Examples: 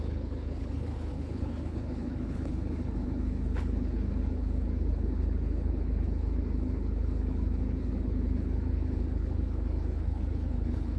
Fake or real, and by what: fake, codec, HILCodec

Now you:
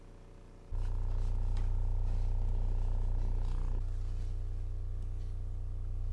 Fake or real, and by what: real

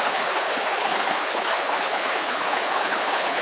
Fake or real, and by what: fake, codec, HILCodec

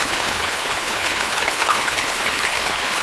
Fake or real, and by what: fake, codec, HILCodec